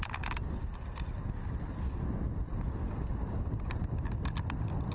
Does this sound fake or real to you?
real